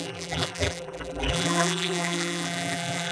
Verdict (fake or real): fake